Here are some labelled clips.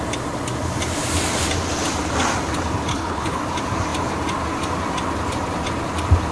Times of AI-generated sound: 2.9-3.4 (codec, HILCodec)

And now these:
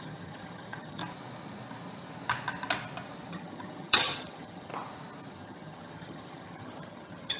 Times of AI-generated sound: 0.0-1.0 (vocoder, HiFi-GAN); 3.3-4.7; 5.3-7.4

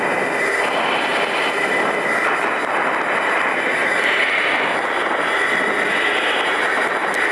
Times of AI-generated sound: none

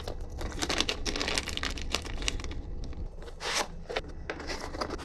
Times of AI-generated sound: none

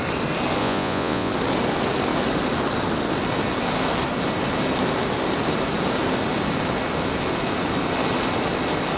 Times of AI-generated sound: 0.6-1.3 (vocoder, Vocos)

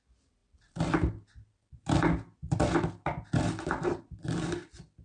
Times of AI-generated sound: none

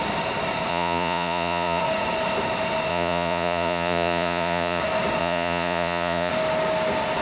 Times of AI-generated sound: 0.7-1.8 (vocoder, Vocos); 2.9-4.8; 5.2-6.3

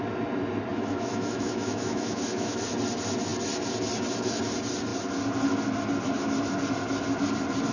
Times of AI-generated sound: 0.7-2.6 (autoencoder, DAC-VAE)